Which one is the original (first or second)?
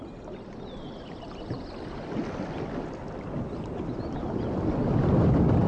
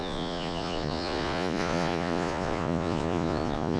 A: first